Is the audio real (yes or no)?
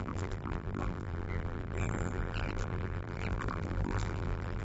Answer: no